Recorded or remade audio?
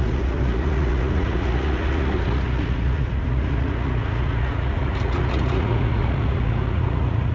remade